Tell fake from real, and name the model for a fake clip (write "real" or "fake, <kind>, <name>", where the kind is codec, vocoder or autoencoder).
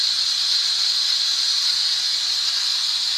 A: real